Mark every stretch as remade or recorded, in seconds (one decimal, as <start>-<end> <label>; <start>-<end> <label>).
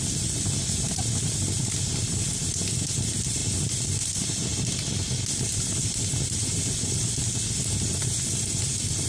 0.0-9.1 recorded